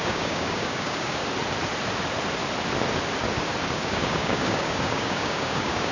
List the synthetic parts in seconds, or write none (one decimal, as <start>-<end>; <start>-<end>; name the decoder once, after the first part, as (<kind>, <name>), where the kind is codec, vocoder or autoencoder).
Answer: 0.0-1.2 (codec, DAC); 3.7-5.9